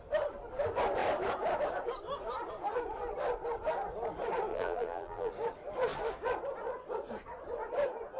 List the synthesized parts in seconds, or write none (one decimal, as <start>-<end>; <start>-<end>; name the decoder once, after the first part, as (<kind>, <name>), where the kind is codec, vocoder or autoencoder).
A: 4.5-5.3 (vocoder, BigVGAN v2)